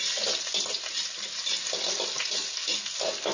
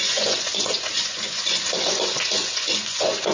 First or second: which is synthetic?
second